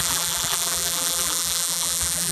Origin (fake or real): fake